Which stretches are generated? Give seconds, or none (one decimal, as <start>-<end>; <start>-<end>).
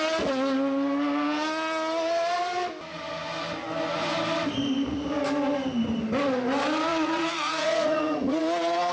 6.9-8.4